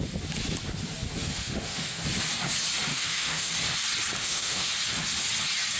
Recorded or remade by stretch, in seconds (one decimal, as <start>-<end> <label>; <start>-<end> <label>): 0.0-1.2 recorded; 1.2-2.0 remade; 2.0-2.9 recorded; 2.9-3.5 remade; 3.5-4.2 recorded; 4.2-4.7 remade; 4.7-5.8 recorded